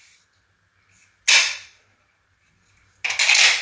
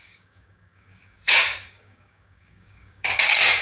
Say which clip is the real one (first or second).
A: first